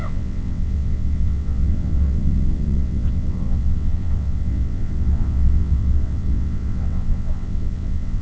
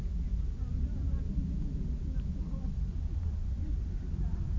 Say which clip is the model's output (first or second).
first